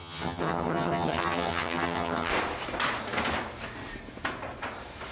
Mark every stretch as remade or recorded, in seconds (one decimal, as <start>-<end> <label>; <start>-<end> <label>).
0.0-2.3 remade; 2.3-5.1 recorded